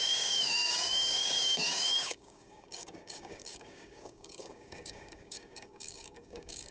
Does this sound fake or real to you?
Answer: fake